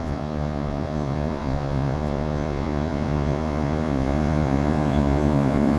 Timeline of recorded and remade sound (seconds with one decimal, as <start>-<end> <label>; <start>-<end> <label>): 0.0-5.8 remade